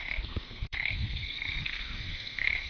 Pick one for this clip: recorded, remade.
remade